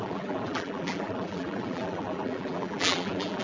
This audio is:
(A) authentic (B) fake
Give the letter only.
B